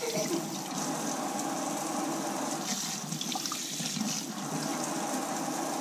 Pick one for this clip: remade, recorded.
recorded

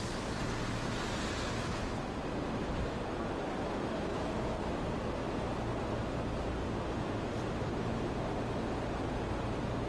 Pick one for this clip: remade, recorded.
recorded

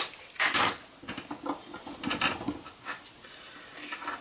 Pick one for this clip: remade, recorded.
recorded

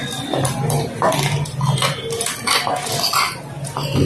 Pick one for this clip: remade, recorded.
recorded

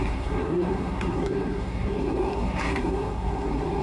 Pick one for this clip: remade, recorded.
remade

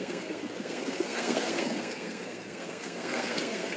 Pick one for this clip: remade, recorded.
remade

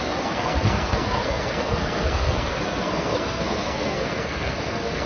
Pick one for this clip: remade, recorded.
remade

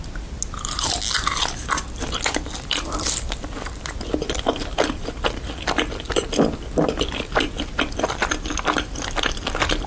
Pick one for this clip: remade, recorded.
recorded